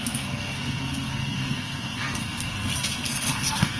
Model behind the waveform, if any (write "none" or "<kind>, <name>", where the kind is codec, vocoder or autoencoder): codec, SNAC